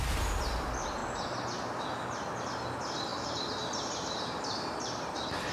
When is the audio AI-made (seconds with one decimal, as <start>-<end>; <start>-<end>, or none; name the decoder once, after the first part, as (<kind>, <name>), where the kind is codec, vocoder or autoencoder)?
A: 3.1-5.5 (vocoder, BigVGAN v2)